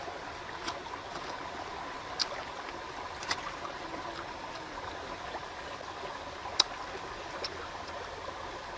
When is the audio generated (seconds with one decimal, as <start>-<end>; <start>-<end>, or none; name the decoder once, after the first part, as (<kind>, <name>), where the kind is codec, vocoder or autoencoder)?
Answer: none